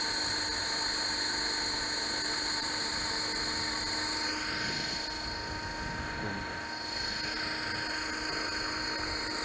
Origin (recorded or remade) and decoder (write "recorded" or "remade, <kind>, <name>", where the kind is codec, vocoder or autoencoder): recorded